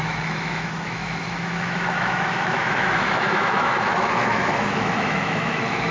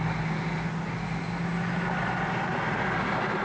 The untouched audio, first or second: second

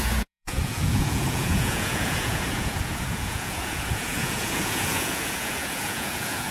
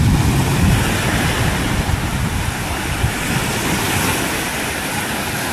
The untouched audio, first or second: second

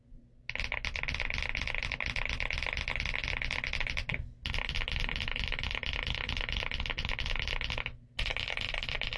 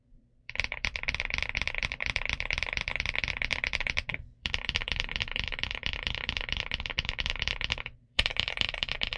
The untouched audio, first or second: first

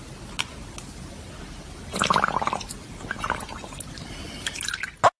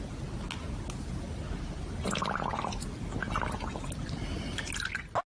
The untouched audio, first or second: second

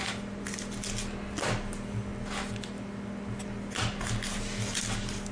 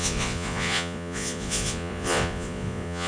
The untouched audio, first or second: first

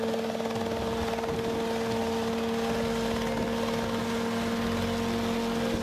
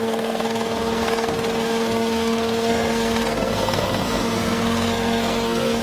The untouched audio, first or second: first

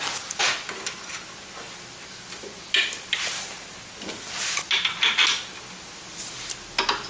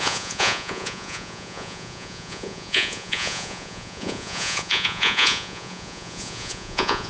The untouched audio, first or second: first